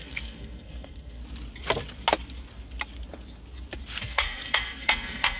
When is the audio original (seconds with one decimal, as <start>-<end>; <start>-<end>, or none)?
1.2-4.0